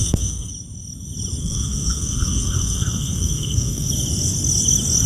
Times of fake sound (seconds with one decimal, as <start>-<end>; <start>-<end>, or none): 0.0-0.5; 1.4-3.9